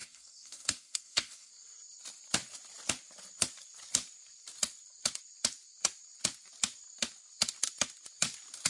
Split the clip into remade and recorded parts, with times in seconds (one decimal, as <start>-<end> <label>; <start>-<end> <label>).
0.0-1.5 remade; 1.5-8.7 recorded